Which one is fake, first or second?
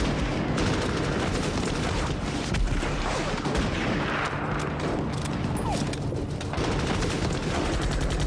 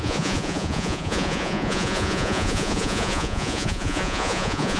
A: second